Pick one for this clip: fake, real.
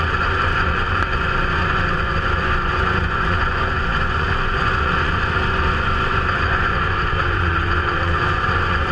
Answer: fake